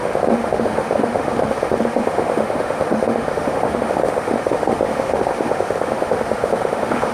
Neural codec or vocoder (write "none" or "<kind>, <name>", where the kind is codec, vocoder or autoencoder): autoencoder, DAC-VAE